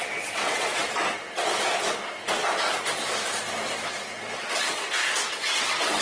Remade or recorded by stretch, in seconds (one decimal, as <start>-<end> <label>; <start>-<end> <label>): 0.0-0.8 remade; 0.8-4.4 recorded; 4.4-5.0 remade; 5.0-5.6 recorded; 5.6-6.0 remade